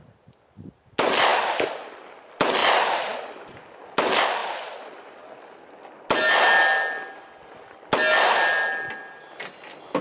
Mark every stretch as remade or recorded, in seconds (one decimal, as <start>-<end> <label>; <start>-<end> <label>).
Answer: 0.0-10.0 recorded